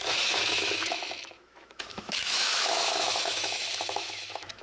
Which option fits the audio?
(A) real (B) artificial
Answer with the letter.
B